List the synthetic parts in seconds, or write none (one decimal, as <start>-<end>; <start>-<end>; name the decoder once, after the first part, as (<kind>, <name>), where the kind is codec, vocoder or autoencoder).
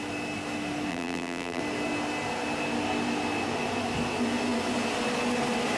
0.9-1.6 (vocoder, BigVGAN v2)